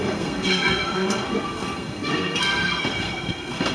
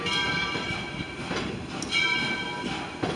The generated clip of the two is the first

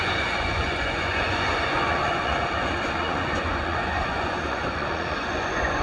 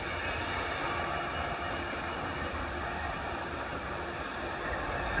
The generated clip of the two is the first